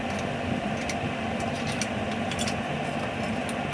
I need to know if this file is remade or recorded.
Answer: recorded